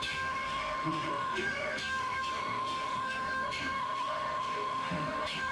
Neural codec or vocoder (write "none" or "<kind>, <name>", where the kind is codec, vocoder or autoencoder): autoencoder, DAC-VAE